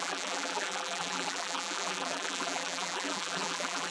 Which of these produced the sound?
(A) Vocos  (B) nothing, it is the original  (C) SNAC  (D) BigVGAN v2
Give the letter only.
D